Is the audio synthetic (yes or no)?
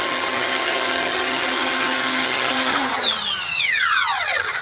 yes